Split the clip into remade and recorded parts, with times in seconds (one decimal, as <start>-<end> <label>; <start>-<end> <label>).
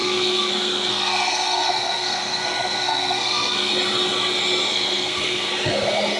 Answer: 0.0-3.7 remade; 3.7-4.7 recorded; 4.7-5.5 remade; 5.5-6.2 recorded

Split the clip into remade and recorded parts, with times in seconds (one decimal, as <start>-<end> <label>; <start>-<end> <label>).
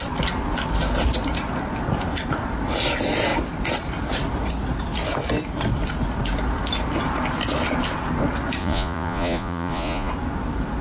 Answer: 0.0-8.6 recorded; 8.6-10.1 remade; 10.1-10.8 recorded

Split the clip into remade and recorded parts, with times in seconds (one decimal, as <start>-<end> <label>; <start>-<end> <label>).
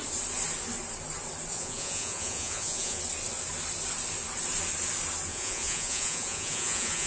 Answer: 0.0-1.5 recorded; 1.5-3.0 remade; 3.0-5.3 recorded; 5.3-7.1 remade